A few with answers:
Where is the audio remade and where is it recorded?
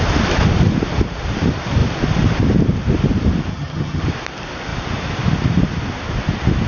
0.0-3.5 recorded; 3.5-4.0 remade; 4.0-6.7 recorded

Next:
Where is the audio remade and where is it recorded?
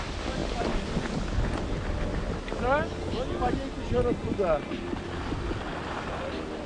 0.0-6.7 recorded